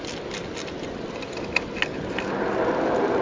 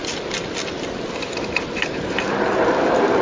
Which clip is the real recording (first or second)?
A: first